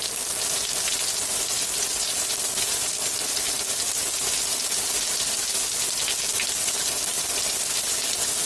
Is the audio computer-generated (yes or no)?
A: no